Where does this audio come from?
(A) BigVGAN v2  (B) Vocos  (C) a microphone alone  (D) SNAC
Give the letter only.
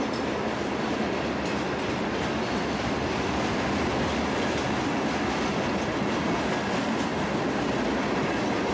C